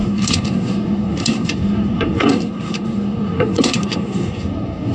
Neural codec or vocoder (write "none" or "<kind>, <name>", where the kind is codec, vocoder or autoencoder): codec, SNAC